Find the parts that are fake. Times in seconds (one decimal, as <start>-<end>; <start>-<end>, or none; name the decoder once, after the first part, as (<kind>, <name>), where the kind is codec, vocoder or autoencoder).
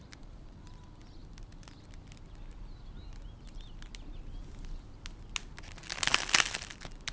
0.0-0.7 (vocoder, BigVGAN v2)